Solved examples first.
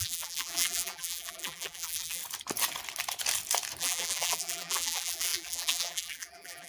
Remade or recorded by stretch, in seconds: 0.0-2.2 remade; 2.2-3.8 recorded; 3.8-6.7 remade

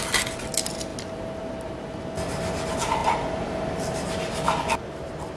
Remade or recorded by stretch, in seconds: 0.0-3.0 recorded; 3.0-5.4 remade

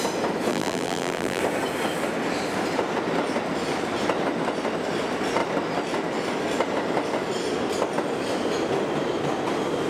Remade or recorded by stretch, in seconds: 0.0-0.5 recorded; 0.5-1.4 remade; 1.4-9.9 recorded

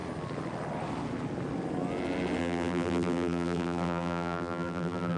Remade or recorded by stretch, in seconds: 0.0-2.4 recorded; 2.4-5.2 remade

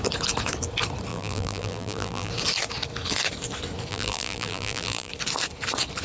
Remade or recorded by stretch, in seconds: 0.0-1.1 recorded; 1.1-2.3 remade; 2.3-3.9 recorded; 3.9-5.1 remade; 5.1-6.0 recorded